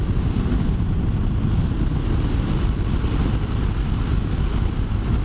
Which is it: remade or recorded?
recorded